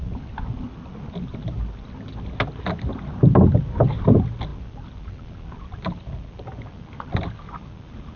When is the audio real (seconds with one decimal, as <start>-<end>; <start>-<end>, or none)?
0.0-8.2